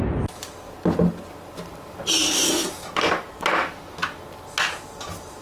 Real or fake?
real